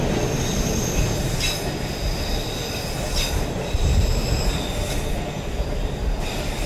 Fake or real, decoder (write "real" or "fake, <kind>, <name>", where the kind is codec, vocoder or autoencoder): real